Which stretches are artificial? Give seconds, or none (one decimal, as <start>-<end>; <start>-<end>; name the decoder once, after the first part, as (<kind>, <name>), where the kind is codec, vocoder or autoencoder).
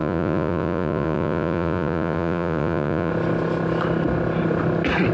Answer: 0.0-3.1 (vocoder, Vocos)